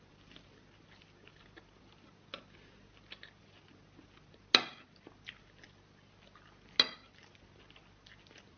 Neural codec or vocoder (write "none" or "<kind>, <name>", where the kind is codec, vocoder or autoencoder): none